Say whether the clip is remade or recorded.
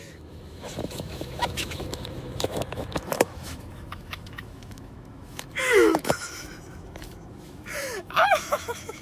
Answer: remade